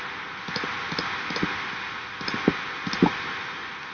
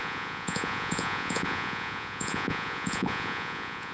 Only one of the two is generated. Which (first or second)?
second